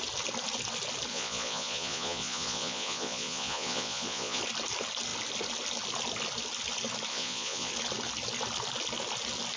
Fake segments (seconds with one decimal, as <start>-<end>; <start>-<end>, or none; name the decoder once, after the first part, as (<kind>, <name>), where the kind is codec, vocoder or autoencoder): 1.1-4.4 (vocoder, Vocos); 7.1-7.7

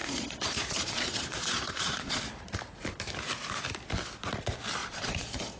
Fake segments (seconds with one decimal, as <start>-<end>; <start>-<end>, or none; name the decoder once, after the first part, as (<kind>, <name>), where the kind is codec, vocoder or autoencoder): 0.0-2.2 (vocoder, Vocos); 4.8-5.6

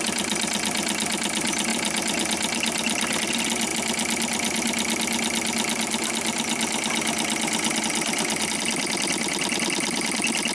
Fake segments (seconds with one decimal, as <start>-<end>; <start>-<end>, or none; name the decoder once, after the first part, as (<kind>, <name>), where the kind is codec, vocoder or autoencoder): none

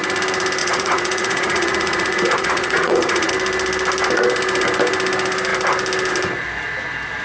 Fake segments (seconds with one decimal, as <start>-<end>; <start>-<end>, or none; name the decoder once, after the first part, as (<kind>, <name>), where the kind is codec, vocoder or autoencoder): 0.6-3.3 (vocoder, Vocos)

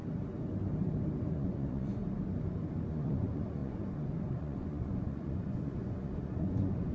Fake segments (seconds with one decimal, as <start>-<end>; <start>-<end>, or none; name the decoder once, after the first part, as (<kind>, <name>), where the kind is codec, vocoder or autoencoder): 1.3-2.0 (vocoder, Vocos); 2.9-6.9